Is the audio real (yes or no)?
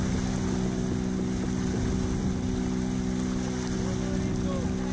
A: yes